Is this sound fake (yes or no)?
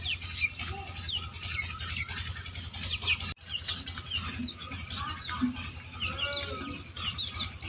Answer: no